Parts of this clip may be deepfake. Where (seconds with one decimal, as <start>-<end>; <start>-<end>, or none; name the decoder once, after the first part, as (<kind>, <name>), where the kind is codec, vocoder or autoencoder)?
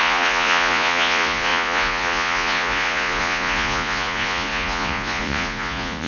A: 0.0-6.1 (vocoder, Vocos)